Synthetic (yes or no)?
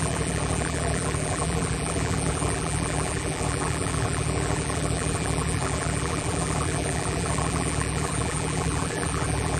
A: yes